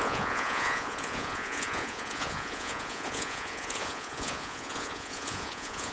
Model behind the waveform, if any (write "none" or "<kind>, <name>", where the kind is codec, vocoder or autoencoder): vocoder, Vocos